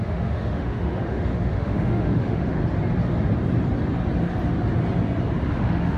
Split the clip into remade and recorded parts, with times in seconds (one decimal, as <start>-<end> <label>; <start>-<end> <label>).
0.0-2.6 remade; 2.6-5.5 recorded; 5.5-6.0 remade

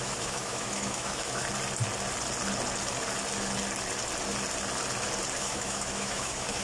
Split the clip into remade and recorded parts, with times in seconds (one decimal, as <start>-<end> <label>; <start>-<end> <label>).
0.0-1.4 remade; 1.4-5.4 recorded; 5.4-6.6 remade

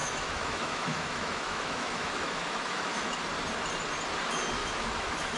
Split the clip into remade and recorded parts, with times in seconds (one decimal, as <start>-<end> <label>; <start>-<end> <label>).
0.0-3.2 remade; 3.2-4.6 recorded; 4.6-5.4 remade

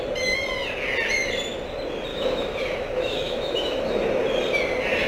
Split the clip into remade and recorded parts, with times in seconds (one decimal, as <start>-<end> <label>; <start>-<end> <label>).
0.0-2.1 recorded; 2.1-4.0 remade; 4.0-5.1 recorded